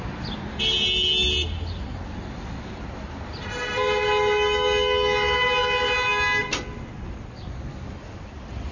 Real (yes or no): yes